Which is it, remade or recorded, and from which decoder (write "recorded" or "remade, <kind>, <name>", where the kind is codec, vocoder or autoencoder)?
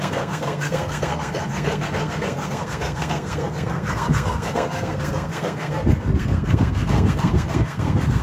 remade, codec, SNAC